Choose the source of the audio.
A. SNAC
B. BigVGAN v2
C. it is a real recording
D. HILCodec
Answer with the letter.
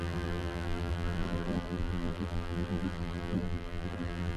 B